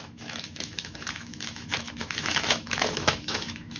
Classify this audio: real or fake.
fake